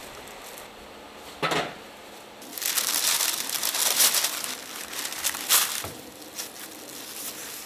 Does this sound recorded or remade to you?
recorded